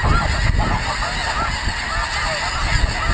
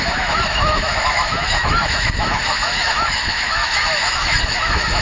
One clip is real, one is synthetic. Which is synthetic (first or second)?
second